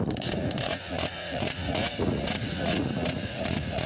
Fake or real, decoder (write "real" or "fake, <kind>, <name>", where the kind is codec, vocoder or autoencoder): fake, vocoder, Vocos